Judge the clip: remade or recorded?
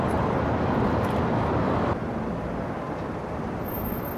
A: recorded